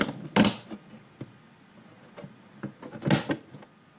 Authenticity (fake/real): real